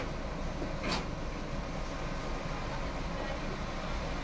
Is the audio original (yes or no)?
yes